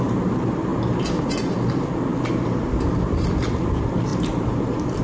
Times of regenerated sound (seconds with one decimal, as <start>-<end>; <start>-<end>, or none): 4.1-5.0